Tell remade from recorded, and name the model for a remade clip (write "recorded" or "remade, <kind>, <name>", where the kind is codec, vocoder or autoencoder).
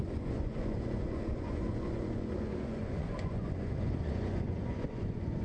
remade, vocoder, Vocos